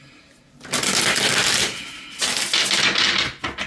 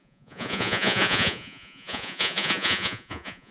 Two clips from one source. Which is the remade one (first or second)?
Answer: second